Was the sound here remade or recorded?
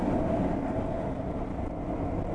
recorded